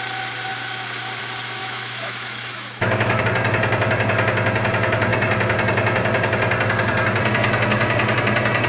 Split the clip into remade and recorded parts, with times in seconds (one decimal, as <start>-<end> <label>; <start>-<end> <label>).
0.0-1.6 recorded; 1.6-3.2 remade; 3.2-8.7 recorded